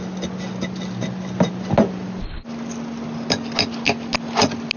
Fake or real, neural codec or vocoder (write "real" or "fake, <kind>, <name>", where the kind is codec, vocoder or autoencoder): real